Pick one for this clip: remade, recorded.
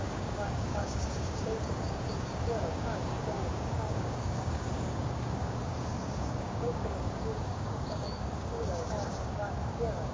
remade